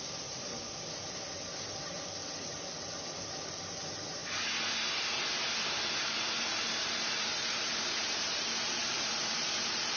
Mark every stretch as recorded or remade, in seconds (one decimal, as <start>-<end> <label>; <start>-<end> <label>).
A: 0.0-0.5 remade; 0.5-3.8 recorded; 3.8-4.2 remade; 4.2-5.8 recorded; 5.8-10.0 remade